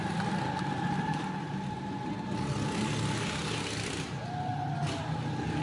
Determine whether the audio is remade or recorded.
recorded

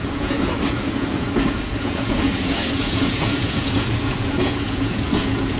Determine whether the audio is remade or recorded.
remade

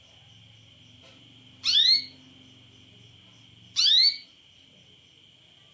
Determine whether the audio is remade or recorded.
recorded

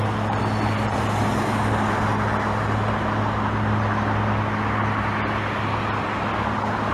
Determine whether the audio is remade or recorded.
recorded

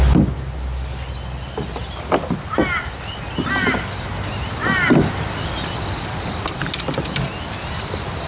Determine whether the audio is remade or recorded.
recorded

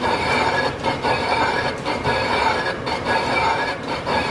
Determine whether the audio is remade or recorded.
remade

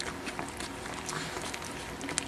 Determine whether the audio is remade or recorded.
recorded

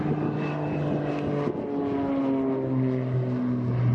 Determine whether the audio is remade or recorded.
recorded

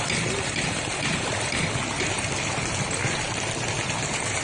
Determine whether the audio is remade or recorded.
recorded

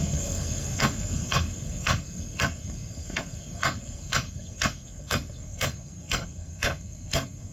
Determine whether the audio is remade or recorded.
remade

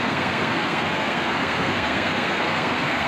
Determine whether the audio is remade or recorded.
remade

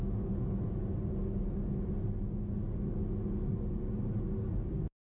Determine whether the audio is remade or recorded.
recorded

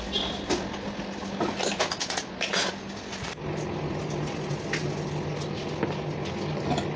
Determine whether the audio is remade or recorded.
recorded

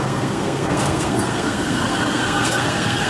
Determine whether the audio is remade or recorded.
remade